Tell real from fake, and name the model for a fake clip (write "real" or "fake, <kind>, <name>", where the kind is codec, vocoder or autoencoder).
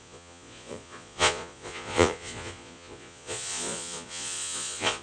fake, vocoder, Vocos